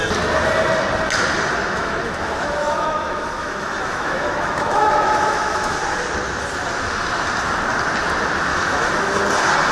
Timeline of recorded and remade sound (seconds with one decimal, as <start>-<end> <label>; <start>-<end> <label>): 0.0-1.6 recorded; 1.6-5.8 remade; 5.8-8.5 recorded; 8.5-9.2 remade; 9.2-9.7 recorded

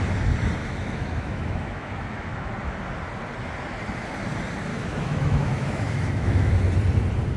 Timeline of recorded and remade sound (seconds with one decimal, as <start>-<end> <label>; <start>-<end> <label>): 0.0-0.6 recorded; 0.6-2.5 remade; 2.5-4.7 recorded; 4.7-6.5 remade; 6.5-7.4 recorded

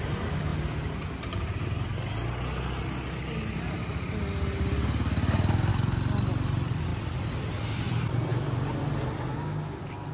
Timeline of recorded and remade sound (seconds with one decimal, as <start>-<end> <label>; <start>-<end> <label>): 0.0-10.1 recorded